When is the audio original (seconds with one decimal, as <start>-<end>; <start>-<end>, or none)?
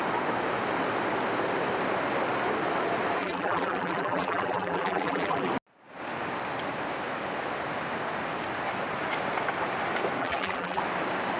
0.0-3.2; 5.5-10.2; 10.8-11.4